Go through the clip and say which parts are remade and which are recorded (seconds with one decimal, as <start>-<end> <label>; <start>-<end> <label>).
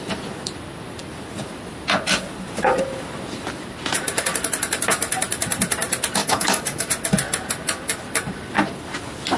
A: 0.0-6.2 recorded; 6.2-6.9 remade; 6.9-9.4 recorded